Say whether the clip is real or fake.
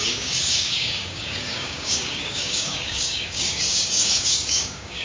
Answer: fake